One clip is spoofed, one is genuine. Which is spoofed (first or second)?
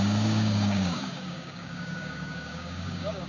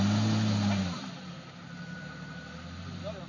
first